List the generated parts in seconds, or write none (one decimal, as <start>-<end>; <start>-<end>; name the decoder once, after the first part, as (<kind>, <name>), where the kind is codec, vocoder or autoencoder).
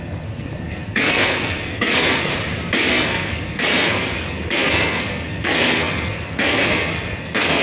0.0-2.3 (codec, SNAC); 2.9-7.6